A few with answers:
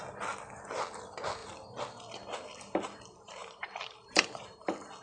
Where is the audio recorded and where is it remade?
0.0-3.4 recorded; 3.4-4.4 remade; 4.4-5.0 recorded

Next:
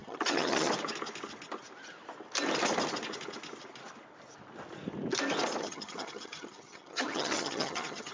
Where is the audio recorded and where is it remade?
0.0-0.7 remade; 0.7-5.6 recorded; 5.6-8.1 remade

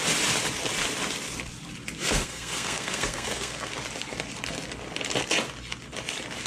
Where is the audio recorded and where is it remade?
0.0-2.0 recorded; 2.0-3.7 remade; 3.7-6.5 recorded

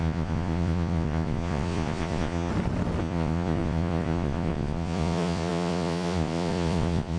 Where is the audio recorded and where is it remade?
0.0-2.5 remade; 2.5-3.0 recorded; 3.0-7.2 remade

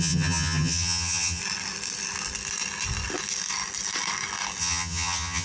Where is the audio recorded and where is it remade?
0.0-1.4 remade; 1.4-4.6 recorded; 4.6-5.4 remade

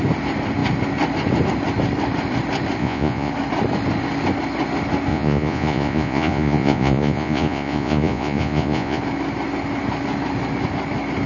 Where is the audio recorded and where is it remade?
0.0-2.8 recorded; 2.8-3.3 remade; 3.3-5.1 recorded; 5.1-9.0 remade; 9.0-11.3 recorded

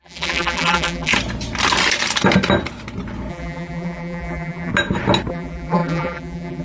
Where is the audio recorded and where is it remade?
0.0-1.1 remade; 1.1-3.3 recorded; 3.3-4.7 remade; 4.7-5.3 recorded; 5.3-6.6 remade

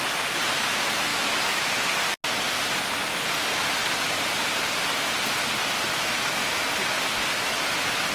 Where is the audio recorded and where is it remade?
0.0-1.1 recorded; 1.1-1.7 remade; 1.7-5.9 recorded; 5.9-6.6 remade; 6.6-8.1 recorded